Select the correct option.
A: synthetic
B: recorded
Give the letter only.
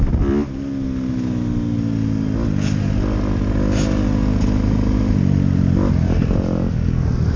B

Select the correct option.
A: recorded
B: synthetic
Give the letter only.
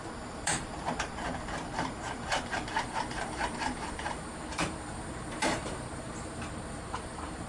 B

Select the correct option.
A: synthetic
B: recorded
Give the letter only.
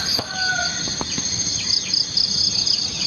B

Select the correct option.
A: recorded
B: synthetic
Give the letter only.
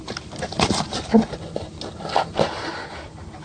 A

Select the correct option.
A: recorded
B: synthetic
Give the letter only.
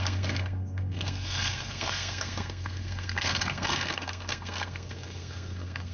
B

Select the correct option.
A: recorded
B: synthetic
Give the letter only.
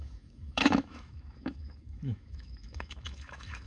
B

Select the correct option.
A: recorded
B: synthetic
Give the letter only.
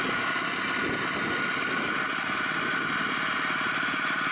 A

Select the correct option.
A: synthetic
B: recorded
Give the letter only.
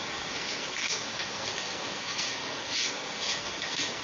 A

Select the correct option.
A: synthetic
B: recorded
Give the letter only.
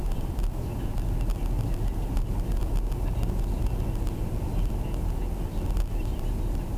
B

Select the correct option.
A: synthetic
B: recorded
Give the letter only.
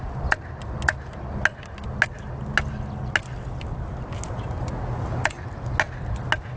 B